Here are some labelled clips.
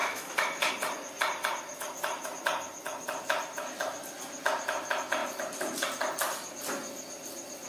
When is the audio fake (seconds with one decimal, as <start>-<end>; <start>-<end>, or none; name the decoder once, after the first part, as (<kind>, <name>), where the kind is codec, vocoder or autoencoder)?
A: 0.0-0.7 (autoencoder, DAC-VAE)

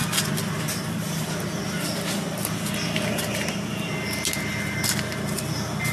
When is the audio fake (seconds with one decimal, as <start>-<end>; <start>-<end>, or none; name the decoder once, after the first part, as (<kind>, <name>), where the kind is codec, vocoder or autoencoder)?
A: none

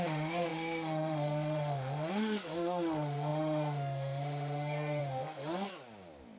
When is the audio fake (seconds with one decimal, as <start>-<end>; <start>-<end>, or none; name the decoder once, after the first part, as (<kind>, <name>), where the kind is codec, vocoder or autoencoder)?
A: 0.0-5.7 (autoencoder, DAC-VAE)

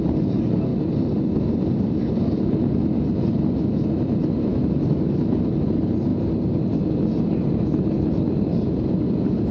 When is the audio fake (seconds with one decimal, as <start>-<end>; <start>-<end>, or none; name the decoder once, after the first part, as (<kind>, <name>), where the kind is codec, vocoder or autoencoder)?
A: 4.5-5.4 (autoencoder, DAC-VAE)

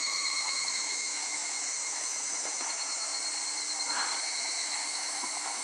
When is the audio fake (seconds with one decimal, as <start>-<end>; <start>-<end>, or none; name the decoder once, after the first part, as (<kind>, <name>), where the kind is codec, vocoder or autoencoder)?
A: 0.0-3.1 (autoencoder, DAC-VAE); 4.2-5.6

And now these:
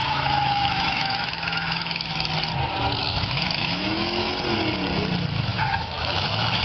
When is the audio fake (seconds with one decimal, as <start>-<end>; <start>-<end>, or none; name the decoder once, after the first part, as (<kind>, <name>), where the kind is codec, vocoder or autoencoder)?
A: 0.0-2.3 (autoencoder, DAC-VAE); 3.0-4.3; 5.5-6.6